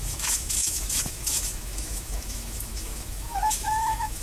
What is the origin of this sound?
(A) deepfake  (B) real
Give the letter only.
A